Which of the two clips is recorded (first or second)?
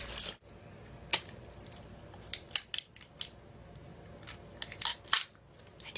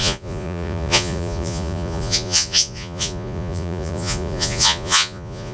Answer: first